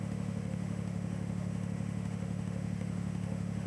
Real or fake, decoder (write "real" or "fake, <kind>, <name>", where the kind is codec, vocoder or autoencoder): fake, autoencoder, DAC-VAE